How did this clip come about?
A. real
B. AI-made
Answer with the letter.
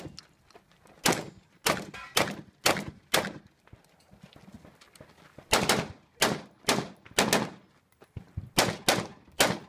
A